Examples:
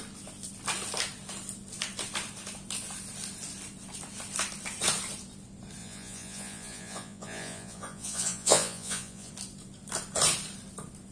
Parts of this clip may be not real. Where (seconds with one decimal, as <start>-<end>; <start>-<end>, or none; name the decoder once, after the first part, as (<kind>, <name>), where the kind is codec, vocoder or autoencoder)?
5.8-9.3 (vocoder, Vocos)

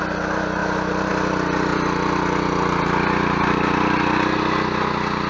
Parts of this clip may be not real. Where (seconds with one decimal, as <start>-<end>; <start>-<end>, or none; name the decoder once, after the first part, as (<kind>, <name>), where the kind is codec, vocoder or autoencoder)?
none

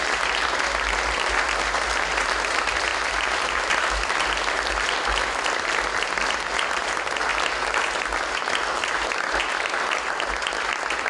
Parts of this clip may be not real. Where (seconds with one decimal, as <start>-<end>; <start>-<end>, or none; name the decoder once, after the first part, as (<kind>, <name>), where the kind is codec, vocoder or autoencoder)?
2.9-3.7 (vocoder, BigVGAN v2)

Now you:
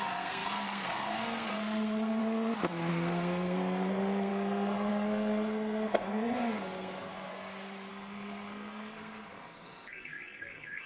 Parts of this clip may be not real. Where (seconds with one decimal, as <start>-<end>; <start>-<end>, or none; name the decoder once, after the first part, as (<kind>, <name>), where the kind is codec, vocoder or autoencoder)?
0.0-2.2 (codec, SNAC); 2.9-7.3; 7.9-10.9

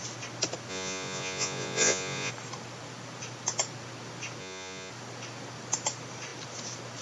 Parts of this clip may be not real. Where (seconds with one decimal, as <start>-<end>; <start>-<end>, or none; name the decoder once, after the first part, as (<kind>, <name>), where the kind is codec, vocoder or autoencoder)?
0.7-2.3 (vocoder, Vocos); 4.4-4.9